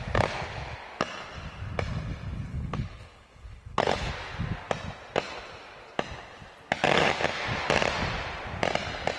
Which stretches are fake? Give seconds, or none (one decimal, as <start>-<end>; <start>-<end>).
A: 2.5-4.1